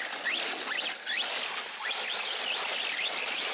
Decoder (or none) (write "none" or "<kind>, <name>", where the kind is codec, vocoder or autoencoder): none